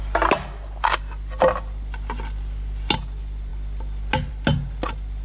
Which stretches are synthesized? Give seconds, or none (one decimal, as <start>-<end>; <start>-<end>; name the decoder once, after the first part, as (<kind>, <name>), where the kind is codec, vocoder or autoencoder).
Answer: none